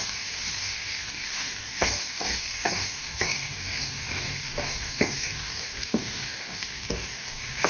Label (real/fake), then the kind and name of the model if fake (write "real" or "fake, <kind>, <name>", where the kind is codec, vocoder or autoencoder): fake, codec, DAC